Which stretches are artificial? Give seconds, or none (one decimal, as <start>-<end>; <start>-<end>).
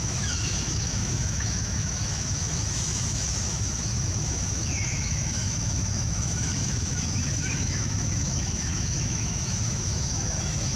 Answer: 0.0-10.8